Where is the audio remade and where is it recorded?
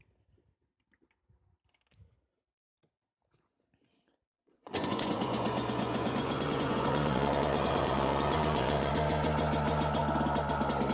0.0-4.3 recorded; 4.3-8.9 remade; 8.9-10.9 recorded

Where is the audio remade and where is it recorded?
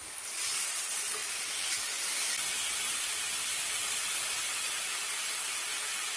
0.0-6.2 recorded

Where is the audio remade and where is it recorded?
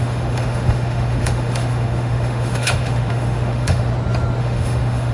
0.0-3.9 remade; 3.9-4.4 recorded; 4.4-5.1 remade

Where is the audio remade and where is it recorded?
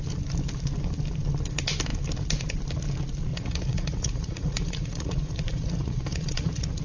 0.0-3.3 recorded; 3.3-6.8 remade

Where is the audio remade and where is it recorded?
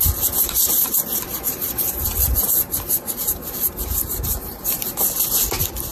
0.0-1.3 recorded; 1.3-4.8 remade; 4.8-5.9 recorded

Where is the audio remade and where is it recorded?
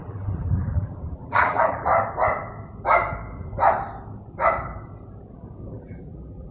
0.0-1.9 remade; 1.9-5.8 recorded; 5.8-6.5 remade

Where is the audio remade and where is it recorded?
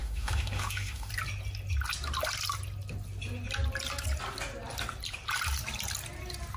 0.0-1.1 remade; 1.1-6.6 recorded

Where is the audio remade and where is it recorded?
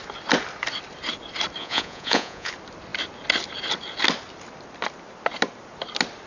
0.0-1.6 recorded; 1.6-2.5 remade; 2.5-6.3 recorded